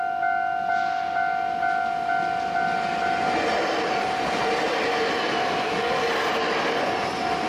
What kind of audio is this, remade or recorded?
recorded